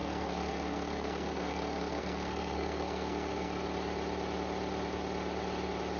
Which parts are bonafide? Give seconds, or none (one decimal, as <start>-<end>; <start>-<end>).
3.6-6.0